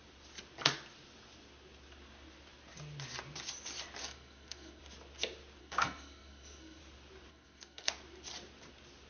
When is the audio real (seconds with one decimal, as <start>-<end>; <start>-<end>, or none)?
0.0-4.0; 4.8-5.6; 6.8-7.3; 7.9-9.1